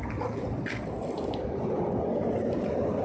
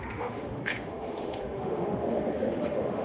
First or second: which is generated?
second